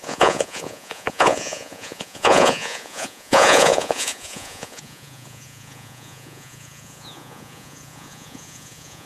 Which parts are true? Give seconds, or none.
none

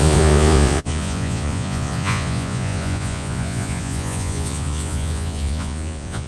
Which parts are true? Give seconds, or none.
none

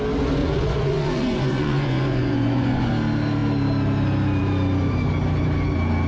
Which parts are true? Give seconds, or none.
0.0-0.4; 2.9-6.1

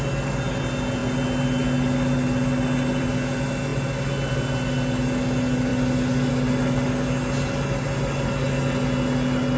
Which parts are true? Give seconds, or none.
0.0-9.6